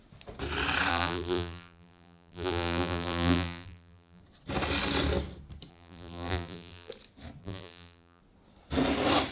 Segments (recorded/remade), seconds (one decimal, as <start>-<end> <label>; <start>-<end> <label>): 0.0-0.9 recorded; 0.9-4.2 remade; 4.2-5.7 recorded; 5.7-6.9 remade; 6.9-7.4 recorded; 7.4-8.2 remade; 8.2-9.3 recorded